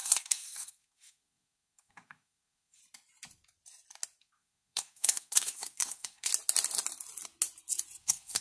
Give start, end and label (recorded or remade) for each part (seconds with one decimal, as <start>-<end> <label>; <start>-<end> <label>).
0.0-2.8 remade; 2.8-4.2 recorded; 4.2-6.3 remade; 6.3-8.0 recorded; 8.0-8.4 remade